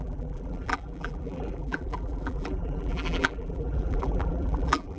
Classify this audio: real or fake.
fake